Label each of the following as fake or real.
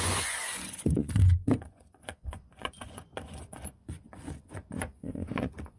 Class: fake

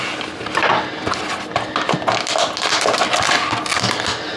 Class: real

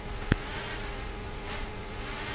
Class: fake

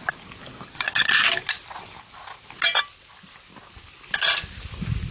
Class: real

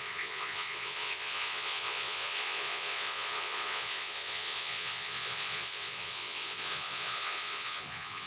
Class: fake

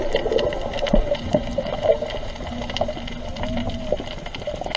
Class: real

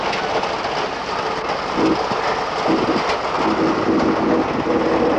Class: real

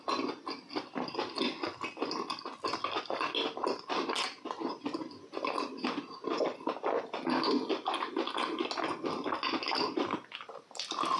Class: real